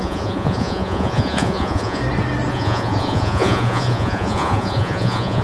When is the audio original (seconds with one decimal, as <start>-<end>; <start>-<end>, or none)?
2.0-2.5